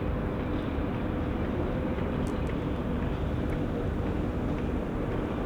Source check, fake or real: real